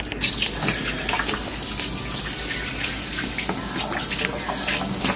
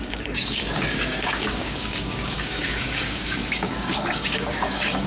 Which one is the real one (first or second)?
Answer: first